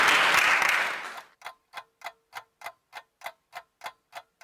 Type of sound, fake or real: real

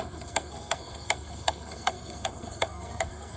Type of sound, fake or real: fake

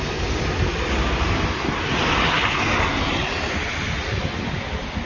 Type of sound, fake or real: real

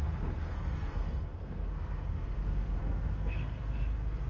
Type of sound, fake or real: fake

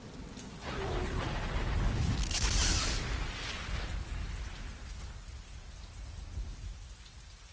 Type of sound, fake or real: real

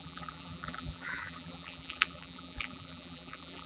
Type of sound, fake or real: fake